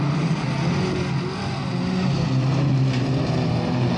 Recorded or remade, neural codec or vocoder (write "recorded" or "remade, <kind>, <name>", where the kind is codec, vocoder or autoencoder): recorded